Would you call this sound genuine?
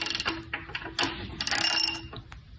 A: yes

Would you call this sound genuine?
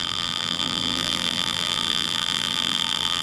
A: no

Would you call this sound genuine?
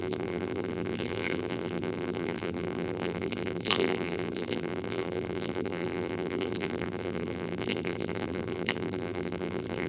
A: no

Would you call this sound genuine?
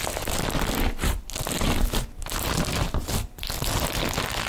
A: yes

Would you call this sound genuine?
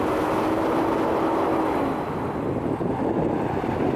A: yes